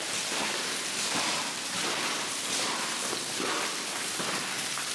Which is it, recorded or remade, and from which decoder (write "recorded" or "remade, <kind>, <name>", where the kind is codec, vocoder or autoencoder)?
recorded